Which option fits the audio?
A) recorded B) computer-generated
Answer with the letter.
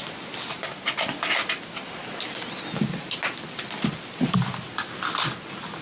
A